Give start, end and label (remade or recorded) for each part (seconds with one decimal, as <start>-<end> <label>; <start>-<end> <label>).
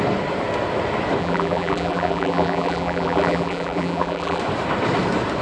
0.0-1.2 recorded; 1.2-4.4 remade; 4.4-5.4 recorded